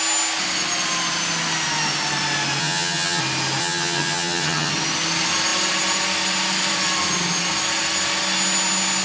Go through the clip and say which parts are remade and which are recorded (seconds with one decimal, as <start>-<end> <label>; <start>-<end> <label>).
0.0-2.6 recorded; 2.6-3.2 remade; 3.2-3.6 recorded; 3.6-4.7 remade; 4.7-9.0 recorded